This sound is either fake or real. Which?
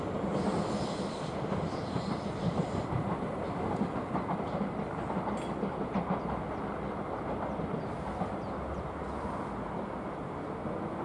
real